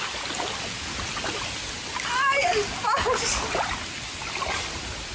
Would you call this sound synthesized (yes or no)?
no